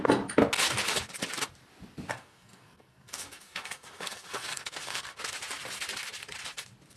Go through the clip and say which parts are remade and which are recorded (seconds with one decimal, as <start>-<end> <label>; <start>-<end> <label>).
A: 0.0-2.1 recorded; 2.1-5.2 remade; 5.2-7.0 recorded